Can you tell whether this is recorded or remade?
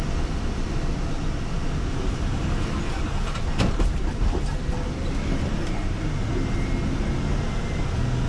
recorded